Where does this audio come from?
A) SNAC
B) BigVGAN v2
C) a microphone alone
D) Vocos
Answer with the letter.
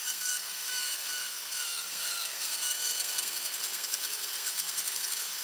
A